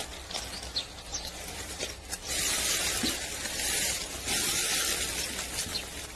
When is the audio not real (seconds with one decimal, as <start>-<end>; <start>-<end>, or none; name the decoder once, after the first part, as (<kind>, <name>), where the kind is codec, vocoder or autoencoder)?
1.1-4.8 (vocoder, BigVGAN v2)